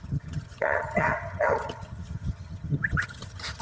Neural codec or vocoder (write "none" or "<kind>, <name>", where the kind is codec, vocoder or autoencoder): vocoder, HiFi-GAN